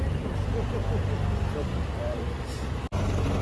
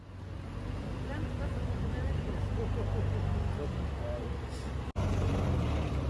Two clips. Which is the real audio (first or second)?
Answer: second